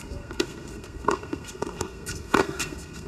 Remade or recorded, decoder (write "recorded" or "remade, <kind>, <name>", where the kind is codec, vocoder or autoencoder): remade, codec, SNAC